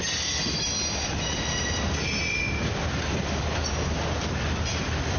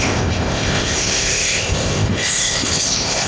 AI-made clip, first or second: second